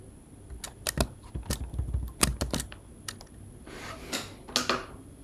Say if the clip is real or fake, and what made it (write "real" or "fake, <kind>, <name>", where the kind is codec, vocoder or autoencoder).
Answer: real